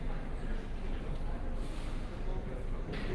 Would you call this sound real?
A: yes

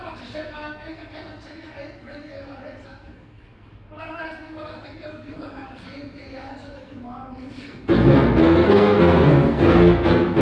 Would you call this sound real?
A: no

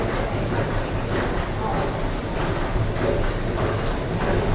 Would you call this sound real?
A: yes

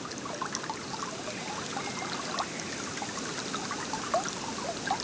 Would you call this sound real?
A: yes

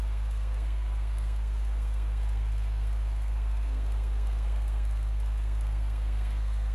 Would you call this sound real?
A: no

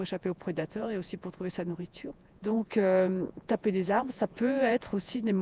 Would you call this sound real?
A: no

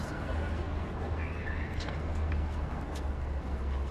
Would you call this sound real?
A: no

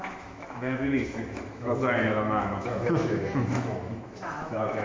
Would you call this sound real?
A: no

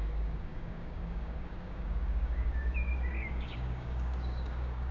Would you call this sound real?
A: no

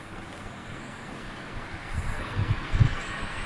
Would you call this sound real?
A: no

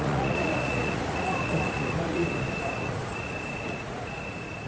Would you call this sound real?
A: no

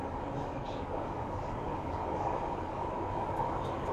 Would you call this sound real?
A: no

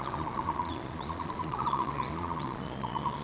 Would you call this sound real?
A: no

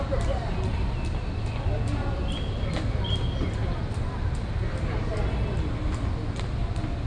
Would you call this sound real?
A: yes